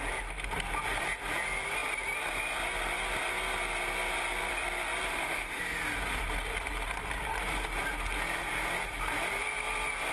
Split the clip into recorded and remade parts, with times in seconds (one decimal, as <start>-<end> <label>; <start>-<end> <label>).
0.0-5.1 recorded; 5.1-5.6 remade; 5.6-10.1 recorded